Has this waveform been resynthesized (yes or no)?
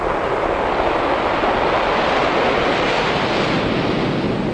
no